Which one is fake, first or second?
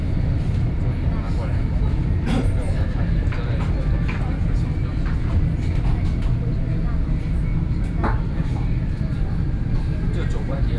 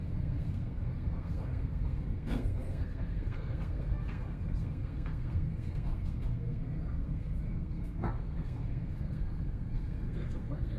second